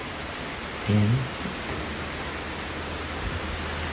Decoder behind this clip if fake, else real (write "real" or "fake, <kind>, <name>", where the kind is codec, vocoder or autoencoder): real